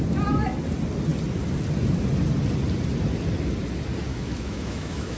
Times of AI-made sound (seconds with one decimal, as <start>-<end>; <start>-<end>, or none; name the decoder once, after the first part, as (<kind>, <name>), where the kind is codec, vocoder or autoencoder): 4.1-5.2 (autoencoder, DAC-VAE)